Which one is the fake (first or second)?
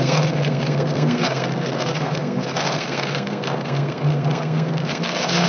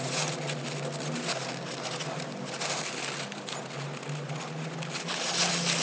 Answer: first